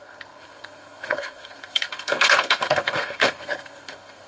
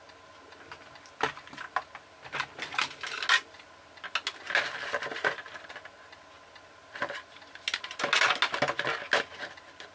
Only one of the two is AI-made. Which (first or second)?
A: first